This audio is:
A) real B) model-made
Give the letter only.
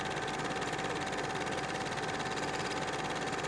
A